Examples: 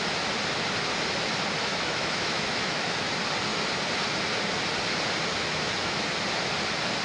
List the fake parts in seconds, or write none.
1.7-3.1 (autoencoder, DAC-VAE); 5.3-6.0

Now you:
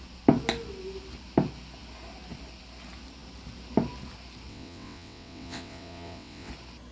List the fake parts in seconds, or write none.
4.5-6.5 (vocoder, WaveNeXt)

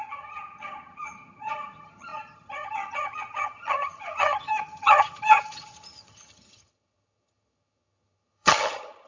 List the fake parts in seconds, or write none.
0.0-9.1 (vocoder, HiFi-GAN)

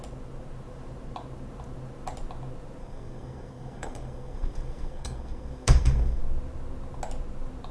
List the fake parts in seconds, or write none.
2.8-6.2 (codec, SNAC)

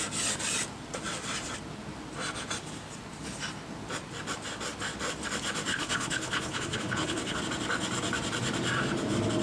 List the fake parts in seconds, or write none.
5.7-7.4 (codec, HILCodec)

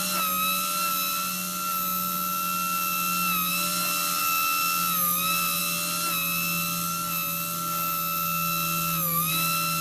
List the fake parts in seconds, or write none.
none

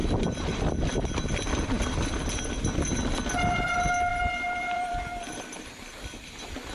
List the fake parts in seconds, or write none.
4.1-5.9 (vocoder, BigVGAN v2)